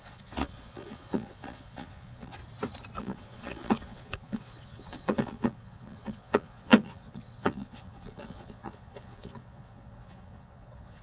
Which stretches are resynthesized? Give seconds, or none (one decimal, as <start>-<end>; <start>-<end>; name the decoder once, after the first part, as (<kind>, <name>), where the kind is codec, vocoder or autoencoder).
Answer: 0.0-2.4 (vocoder, Vocos); 3.0-11.0

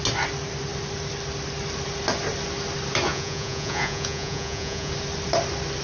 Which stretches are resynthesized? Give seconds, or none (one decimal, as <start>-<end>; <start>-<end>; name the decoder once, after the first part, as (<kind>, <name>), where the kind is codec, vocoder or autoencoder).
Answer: 3.1-4.9 (vocoder, Vocos)

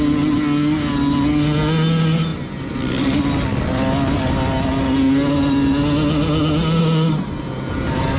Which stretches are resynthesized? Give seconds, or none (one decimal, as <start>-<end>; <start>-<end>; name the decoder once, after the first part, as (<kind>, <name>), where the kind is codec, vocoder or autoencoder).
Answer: none

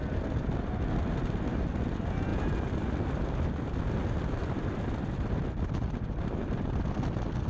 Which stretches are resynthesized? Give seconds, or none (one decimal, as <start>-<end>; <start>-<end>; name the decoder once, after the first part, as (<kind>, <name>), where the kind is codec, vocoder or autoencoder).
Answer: none

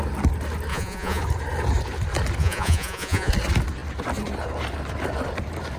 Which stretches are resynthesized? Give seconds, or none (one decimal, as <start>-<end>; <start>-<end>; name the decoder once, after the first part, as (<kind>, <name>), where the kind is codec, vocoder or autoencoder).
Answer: 0.7-1.2 (vocoder, Vocos); 2.4-3.3